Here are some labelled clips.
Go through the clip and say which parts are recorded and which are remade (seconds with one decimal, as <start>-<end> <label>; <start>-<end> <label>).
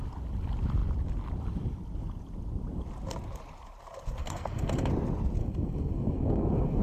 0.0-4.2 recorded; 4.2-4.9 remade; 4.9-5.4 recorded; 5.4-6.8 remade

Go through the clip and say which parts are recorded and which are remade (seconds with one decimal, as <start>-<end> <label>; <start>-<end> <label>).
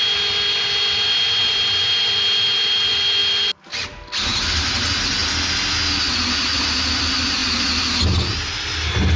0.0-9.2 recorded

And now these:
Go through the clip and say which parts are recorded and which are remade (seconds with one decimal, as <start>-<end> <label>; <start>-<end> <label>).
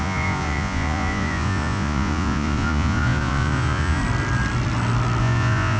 0.0-4.0 remade; 4.0-5.2 recorded; 5.2-5.8 remade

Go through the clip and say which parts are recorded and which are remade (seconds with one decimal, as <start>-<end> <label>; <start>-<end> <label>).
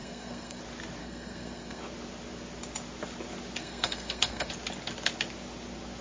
0.0-0.6 remade; 0.6-1.0 recorded; 1.0-1.8 remade; 1.8-3.6 recorded; 3.6-4.5 remade; 4.5-6.0 recorded